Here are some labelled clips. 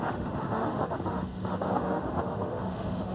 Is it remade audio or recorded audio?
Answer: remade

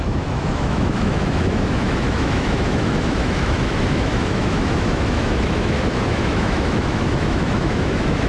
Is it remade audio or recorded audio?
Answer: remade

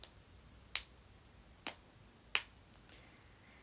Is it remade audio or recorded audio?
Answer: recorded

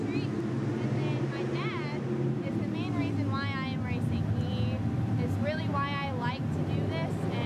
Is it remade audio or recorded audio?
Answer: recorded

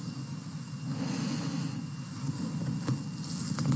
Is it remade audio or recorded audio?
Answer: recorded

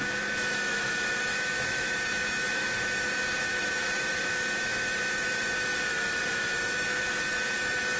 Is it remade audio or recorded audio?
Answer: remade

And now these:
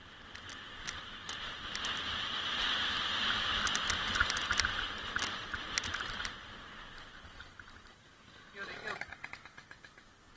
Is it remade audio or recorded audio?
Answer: recorded